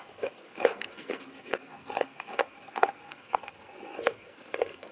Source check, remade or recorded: remade